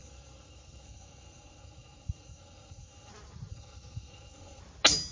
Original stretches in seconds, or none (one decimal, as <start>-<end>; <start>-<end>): 3.1-3.5; 4.6-5.1